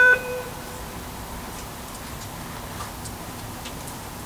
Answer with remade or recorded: remade